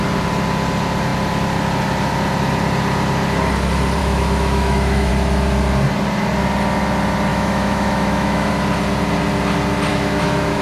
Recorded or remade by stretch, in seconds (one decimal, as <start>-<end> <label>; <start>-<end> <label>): 0.0-4.0 recorded; 4.0-5.1 remade; 5.1-7.3 recorded; 7.3-8.5 remade; 8.5-9.9 recorded; 9.9-10.6 remade